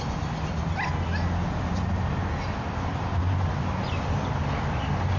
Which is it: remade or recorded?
recorded